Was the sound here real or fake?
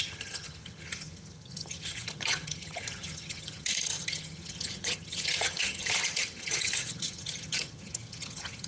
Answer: fake